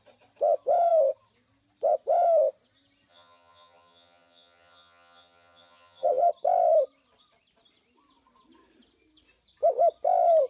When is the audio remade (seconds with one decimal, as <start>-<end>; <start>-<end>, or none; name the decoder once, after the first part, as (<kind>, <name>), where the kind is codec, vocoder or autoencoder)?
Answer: 3.1-6.3 (vocoder, HiFi-GAN)